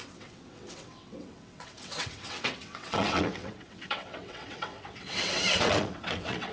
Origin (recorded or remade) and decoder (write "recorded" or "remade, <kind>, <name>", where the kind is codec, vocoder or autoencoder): remade, vocoder, WaveNeXt